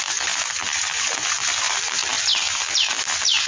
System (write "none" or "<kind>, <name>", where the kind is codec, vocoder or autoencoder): none